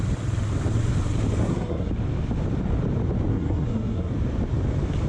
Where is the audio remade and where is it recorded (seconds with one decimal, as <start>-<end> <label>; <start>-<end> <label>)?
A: 0.0-1.4 recorded; 1.4-1.9 remade; 1.9-3.3 recorded; 3.3-4.1 remade; 4.1-5.1 recorded

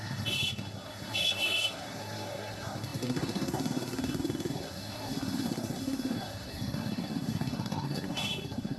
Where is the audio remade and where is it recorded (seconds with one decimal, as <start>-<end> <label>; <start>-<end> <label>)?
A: 0.0-8.8 remade

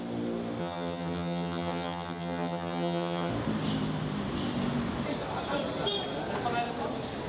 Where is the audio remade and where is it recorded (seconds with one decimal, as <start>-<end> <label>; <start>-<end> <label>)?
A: 0.0-0.6 recorded; 0.6-3.3 remade; 3.3-7.3 recorded